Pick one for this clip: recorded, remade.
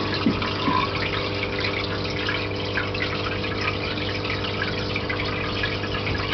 recorded